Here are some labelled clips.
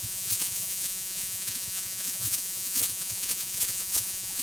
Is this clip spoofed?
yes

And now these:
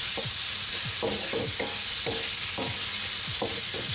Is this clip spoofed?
no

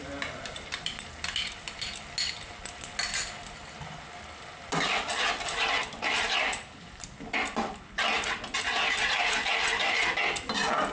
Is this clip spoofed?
no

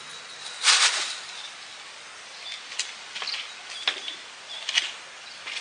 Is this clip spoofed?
no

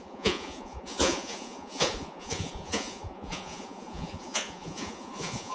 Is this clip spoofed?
yes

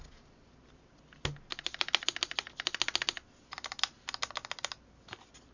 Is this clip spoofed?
no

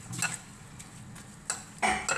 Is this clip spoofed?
no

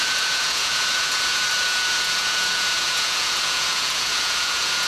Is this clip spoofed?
yes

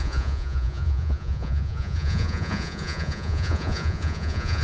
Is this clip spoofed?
yes